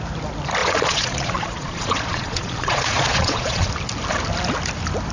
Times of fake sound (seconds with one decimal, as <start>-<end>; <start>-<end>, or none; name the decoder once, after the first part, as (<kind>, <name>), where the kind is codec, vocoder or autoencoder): 0.6-3.7 (vocoder, Vocos)